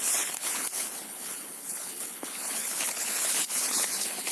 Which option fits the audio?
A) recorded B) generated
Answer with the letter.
B